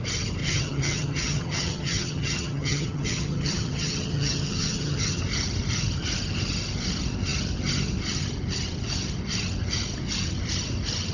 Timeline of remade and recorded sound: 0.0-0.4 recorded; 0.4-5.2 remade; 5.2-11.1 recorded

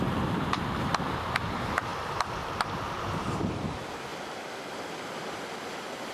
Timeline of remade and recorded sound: 0.0-1.9 remade; 1.9-2.4 recorded; 2.4-4.1 remade; 4.1-4.7 recorded; 4.7-6.1 remade

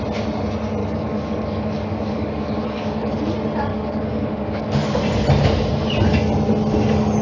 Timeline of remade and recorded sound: 0.0-0.8 recorded; 0.8-3.2 remade; 3.2-3.7 recorded; 3.7-5.0 remade; 5.0-7.2 recorded

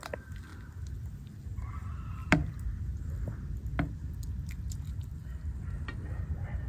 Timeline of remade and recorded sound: 0.0-0.5 remade; 0.5-1.4 recorded; 1.4-6.7 remade